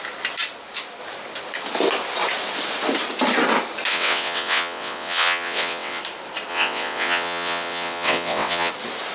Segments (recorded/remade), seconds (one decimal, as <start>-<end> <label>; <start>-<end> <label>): 0.0-3.9 recorded; 3.9-6.0 remade; 6.0-6.5 recorded; 6.5-8.7 remade; 8.7-9.1 recorded